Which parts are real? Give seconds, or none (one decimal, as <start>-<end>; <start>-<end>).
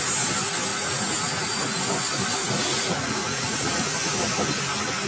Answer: 0.0-0.7; 1.8-2.4; 4.2-5.1